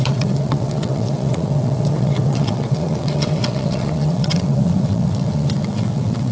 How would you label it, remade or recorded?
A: remade